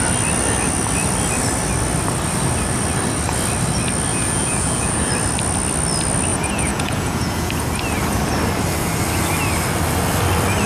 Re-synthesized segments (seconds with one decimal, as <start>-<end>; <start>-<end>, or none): 4.1-5.1; 6.3-7.5